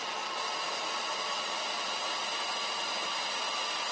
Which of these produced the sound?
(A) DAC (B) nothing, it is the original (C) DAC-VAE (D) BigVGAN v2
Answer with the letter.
B